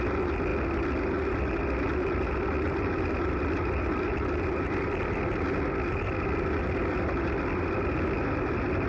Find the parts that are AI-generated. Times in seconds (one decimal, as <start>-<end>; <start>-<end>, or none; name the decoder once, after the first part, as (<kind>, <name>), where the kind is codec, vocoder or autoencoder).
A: none